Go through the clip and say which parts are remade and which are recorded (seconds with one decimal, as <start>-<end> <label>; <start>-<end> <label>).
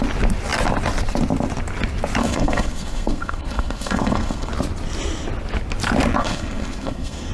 0.0-2.2 recorded; 2.2-4.5 remade; 4.5-6.2 recorded; 6.2-7.3 remade